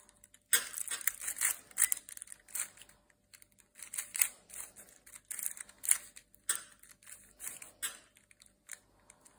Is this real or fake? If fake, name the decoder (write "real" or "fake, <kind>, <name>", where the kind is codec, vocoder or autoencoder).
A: real